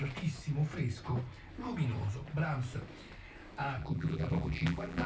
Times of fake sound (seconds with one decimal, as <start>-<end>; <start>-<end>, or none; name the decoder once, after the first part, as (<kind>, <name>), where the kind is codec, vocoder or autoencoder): 3.8-5.1 (vocoder, BigVGAN v2)